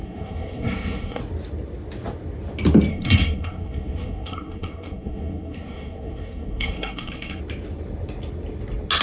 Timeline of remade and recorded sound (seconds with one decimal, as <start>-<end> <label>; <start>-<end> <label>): 0.0-1.2 remade; 1.2-2.9 recorded; 2.9-7.4 remade; 7.4-9.0 recorded

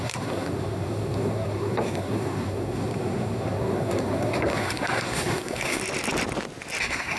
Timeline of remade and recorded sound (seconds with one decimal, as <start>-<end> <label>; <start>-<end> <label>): 0.0-5.8 remade; 5.8-6.8 recorded; 6.8-7.2 remade

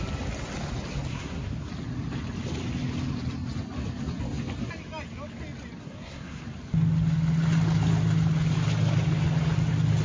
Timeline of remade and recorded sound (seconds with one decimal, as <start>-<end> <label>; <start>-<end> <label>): 0.0-1.1 recorded; 1.1-1.7 remade; 1.7-5.8 recorded; 5.8-6.4 remade; 6.4-10.0 recorded

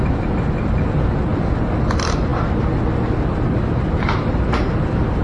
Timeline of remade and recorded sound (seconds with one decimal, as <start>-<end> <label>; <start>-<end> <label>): 0.0-5.2 recorded

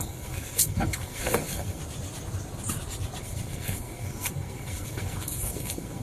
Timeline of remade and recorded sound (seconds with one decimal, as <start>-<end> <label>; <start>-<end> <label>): 0.0-1.8 remade; 1.8-3.2 recorded; 3.2-6.0 remade

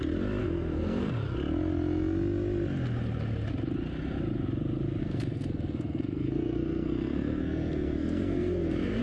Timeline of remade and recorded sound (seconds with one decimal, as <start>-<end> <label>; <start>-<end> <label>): 0.0-0.4 recorded; 0.4-1.1 remade; 1.1-5.0 recorded; 5.0-9.0 remade

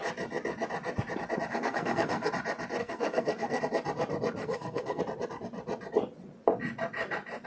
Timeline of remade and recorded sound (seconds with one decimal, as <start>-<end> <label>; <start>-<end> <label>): 0.0-1.5 recorded; 1.5-2.3 remade; 2.3-2.8 recorded; 2.8-3.6 remade; 3.6-4.4 recorded; 4.4-5.0 remade; 5.0-7.5 recorded

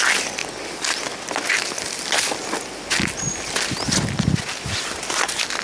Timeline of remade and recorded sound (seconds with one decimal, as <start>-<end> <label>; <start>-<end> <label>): 0.0-5.6 recorded